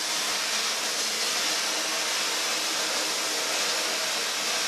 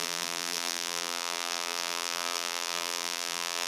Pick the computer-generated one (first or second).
second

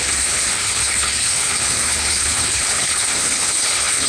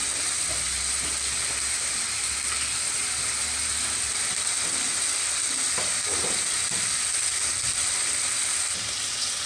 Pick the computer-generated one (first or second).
first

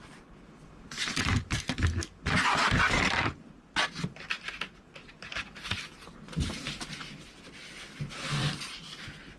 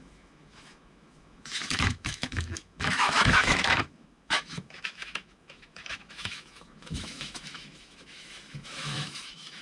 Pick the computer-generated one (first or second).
second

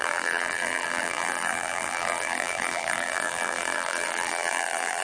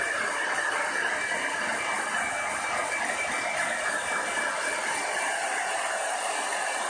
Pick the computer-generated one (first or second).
first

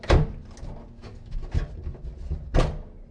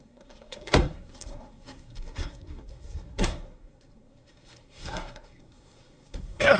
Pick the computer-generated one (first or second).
second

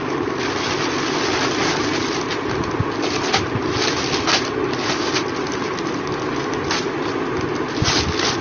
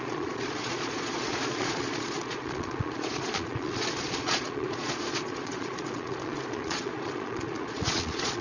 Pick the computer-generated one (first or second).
second